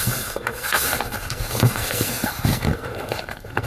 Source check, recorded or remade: remade